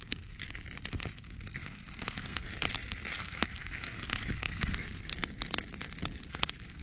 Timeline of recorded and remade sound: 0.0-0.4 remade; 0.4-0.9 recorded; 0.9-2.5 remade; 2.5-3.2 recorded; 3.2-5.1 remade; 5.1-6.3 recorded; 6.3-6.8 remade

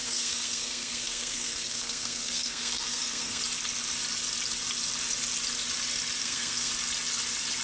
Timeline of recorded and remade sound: 0.0-3.4 remade; 3.4-6.2 recorded; 6.2-6.7 remade; 6.7-7.6 recorded